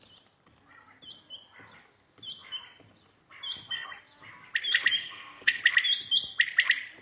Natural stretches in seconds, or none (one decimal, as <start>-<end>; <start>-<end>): 0.0-5.0; 5.6-7.0